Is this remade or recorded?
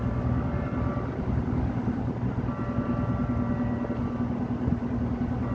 recorded